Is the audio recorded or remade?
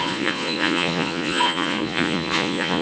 remade